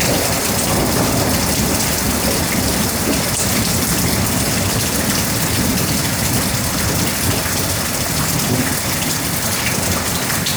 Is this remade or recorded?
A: remade